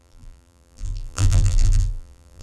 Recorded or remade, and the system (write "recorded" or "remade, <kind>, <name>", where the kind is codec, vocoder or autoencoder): remade, vocoder, BigVGAN v2